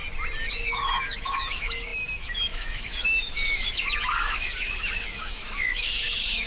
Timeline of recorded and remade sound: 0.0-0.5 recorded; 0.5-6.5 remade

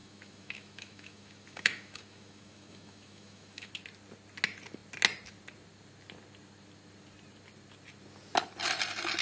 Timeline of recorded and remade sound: 0.0-3.7 remade; 3.7-9.2 recorded

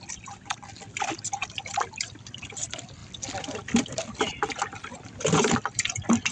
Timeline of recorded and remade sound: 0.0-6.3 recorded